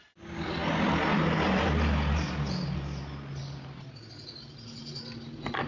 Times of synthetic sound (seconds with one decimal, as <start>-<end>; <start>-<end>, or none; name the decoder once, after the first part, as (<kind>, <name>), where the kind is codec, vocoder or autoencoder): none